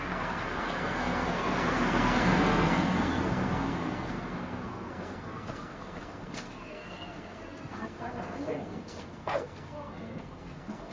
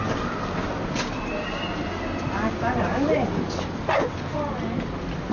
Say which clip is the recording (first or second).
second